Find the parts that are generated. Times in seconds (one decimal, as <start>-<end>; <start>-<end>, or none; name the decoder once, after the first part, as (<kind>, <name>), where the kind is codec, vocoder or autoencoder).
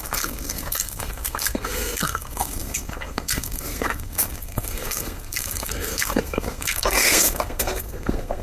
0.0-8.4 (codec, SNAC)